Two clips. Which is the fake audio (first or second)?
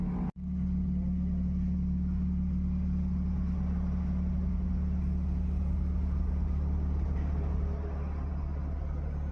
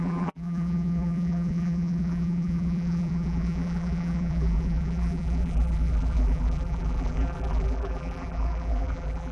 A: second